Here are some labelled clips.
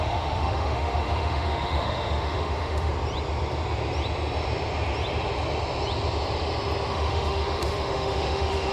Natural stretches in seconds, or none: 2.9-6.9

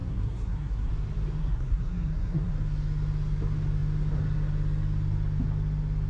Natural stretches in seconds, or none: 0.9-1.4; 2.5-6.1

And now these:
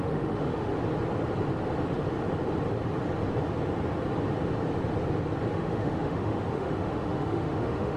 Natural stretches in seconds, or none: 0.7-5.5

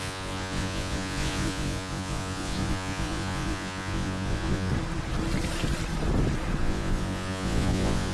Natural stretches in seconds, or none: 4.7-6.6

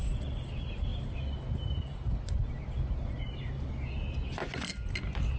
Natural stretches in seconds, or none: 0.0-5.4

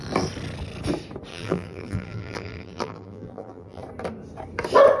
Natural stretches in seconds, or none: 0.0-1.3; 3.8-5.0

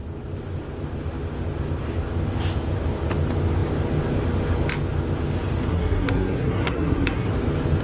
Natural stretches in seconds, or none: 0.0-5.7; 7.3-7.8